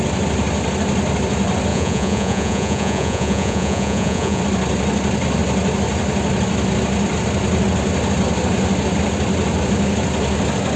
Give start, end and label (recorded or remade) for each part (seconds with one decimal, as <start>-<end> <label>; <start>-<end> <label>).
0.0-1.7 recorded; 1.7-4.4 remade; 4.4-10.8 recorded